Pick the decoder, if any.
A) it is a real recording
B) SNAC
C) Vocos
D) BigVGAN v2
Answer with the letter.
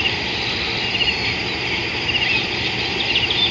A